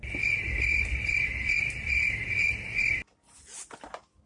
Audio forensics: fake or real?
real